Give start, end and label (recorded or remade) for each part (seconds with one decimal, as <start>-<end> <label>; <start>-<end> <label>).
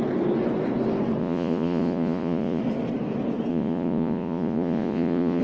0.0-1.2 recorded; 1.2-2.6 remade; 2.6-3.5 recorded; 3.5-5.4 remade